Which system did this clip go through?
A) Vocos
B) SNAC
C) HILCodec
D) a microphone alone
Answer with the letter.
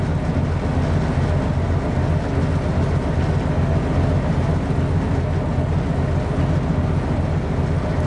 D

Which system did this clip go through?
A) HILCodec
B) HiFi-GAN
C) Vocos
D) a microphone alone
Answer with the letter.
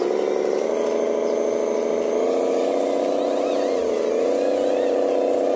D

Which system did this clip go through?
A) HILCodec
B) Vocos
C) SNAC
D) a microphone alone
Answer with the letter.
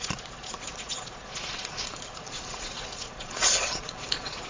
B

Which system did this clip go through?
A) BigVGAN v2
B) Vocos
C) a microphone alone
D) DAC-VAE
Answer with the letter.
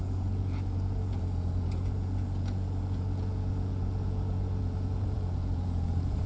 B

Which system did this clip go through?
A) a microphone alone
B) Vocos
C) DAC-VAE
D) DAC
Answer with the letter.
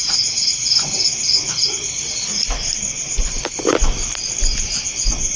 A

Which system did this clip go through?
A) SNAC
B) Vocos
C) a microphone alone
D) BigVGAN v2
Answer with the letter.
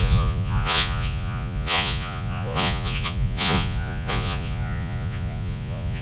B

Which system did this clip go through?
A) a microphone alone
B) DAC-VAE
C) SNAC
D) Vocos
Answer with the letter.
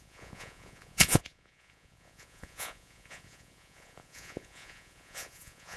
D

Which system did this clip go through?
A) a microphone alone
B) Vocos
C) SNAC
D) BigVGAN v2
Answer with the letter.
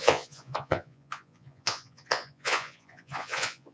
B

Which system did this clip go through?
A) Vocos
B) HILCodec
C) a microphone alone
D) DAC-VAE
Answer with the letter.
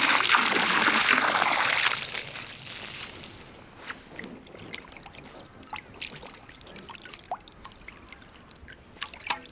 C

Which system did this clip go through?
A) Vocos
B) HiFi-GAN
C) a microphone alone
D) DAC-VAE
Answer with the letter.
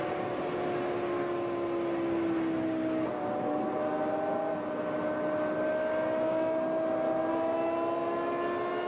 C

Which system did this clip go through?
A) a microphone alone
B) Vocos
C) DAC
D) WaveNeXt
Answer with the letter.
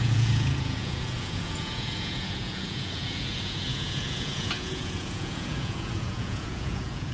B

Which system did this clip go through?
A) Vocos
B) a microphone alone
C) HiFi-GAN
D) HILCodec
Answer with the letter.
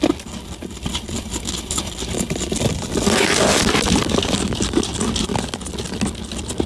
B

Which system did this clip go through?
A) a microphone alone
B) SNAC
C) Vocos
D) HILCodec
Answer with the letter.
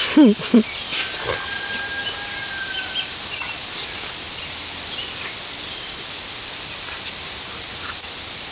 A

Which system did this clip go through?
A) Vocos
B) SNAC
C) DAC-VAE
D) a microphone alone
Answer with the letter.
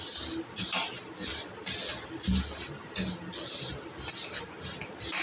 D